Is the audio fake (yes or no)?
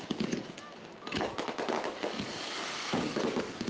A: yes